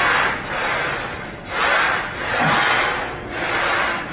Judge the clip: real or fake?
real